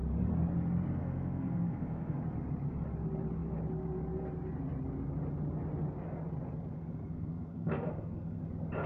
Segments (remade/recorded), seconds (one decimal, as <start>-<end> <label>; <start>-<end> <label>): 0.0-1.0 recorded; 1.0-2.2 remade; 2.2-6.7 recorded; 6.7-8.4 remade; 8.4-8.9 recorded